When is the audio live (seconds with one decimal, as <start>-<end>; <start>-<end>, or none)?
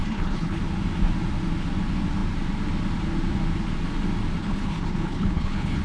0.6-4.4